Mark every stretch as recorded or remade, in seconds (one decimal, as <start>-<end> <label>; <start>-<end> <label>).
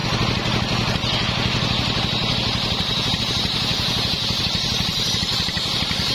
0.0-3.2 recorded; 3.2-3.7 remade; 3.7-4.4 recorded; 4.4-6.1 remade